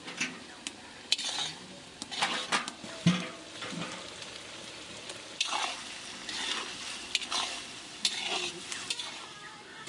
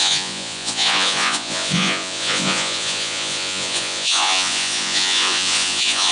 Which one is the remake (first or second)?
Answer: second